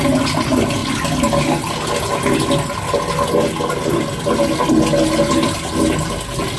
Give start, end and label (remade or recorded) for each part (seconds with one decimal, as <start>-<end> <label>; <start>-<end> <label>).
0.0-6.6 recorded